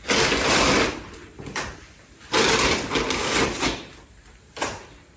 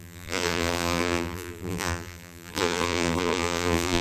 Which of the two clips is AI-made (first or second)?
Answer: second